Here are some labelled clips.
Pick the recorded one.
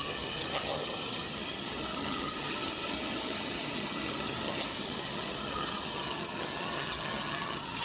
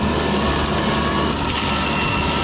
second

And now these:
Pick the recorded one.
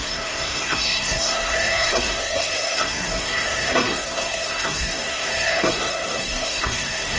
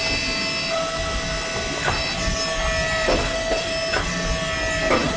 second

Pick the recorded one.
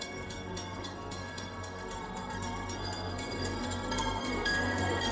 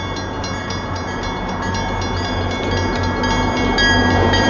second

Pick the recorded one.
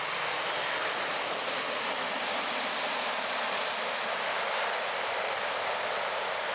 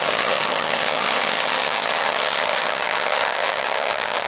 first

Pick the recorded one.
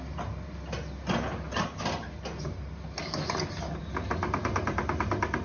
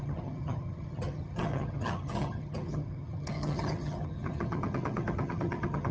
first